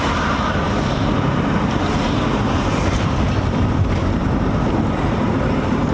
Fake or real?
fake